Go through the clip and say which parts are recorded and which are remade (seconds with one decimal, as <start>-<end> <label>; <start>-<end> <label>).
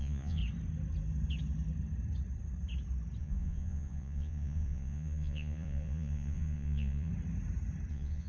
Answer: 0.0-0.4 remade; 0.4-3.2 recorded; 3.2-7.1 remade; 7.1-7.9 recorded; 7.9-8.3 remade